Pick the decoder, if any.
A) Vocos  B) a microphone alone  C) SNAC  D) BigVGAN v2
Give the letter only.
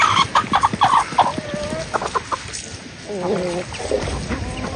B